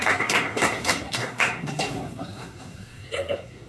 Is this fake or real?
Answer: fake